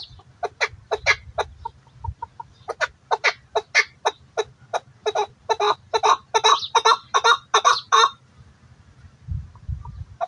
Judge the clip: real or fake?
real